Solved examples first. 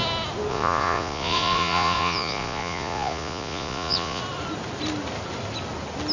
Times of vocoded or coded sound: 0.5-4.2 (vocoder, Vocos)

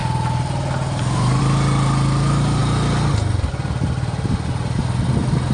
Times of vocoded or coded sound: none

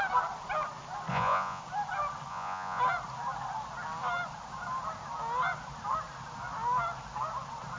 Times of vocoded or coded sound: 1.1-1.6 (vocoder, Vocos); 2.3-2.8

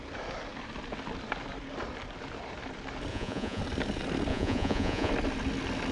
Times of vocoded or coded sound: 3.1-3.6 (vocoder, Vocos); 4.3-5.1

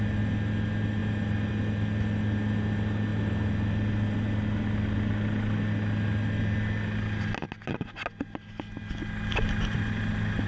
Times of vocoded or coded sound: none

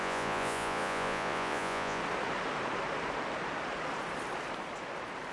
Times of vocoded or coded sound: 0.0-2.0 (vocoder, Vocos)

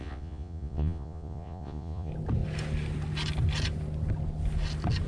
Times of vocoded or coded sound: 0.0-2.1 (vocoder, Vocos)